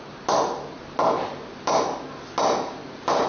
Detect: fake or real real